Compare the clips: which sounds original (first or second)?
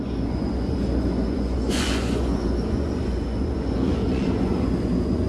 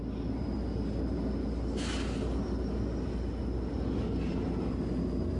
second